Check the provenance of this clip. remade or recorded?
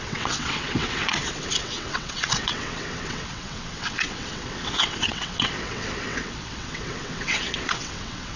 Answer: remade